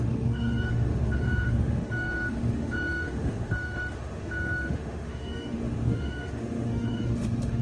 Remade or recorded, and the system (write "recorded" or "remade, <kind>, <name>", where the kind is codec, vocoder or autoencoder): remade, autoencoder, DAC-VAE